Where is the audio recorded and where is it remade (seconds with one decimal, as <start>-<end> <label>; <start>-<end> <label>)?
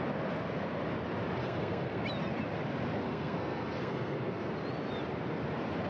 0.0-1.4 recorded; 1.4-2.0 remade; 2.0-3.0 recorded; 3.0-4.5 remade; 4.5-5.9 recorded